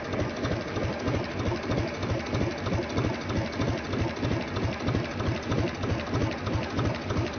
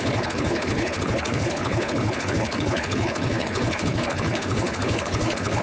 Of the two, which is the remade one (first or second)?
second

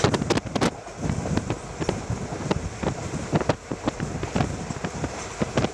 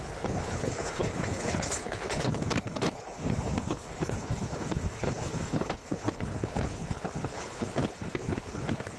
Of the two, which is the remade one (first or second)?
second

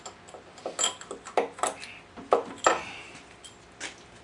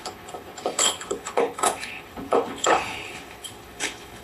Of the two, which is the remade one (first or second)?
second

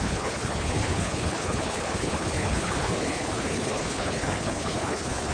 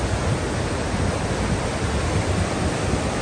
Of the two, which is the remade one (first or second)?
first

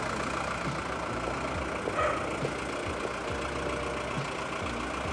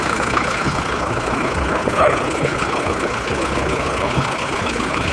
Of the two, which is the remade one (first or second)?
second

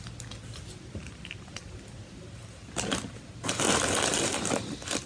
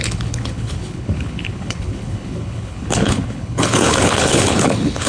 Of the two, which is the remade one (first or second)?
second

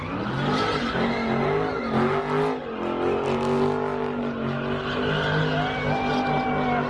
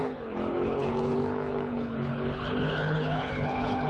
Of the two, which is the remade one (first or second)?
second